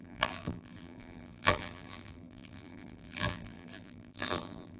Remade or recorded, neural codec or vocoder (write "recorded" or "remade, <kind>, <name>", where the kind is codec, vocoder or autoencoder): remade, vocoder, BigVGAN v2